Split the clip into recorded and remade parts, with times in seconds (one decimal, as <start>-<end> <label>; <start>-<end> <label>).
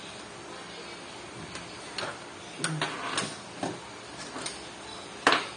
0.0-5.6 recorded